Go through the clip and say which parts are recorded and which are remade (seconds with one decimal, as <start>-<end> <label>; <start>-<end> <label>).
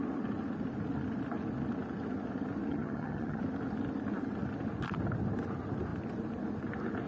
0.0-2.7 recorded; 2.7-3.4 remade; 3.4-7.1 recorded